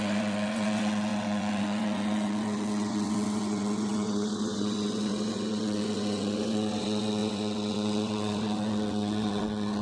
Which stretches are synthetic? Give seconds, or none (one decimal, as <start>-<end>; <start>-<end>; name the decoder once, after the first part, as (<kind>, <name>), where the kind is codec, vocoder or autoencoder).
0.0-9.8 (vocoder, WaveNeXt)